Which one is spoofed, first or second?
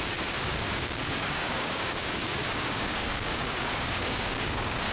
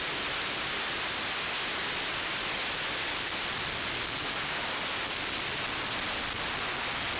first